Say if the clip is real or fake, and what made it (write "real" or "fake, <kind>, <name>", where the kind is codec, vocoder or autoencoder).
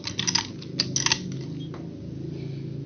real